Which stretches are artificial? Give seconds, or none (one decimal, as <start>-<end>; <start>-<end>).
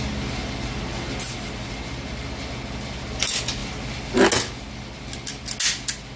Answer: none